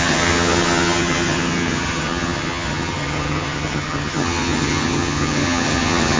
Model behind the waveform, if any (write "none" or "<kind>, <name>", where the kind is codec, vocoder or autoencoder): vocoder, HiFi-GAN